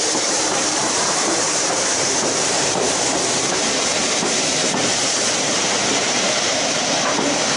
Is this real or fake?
fake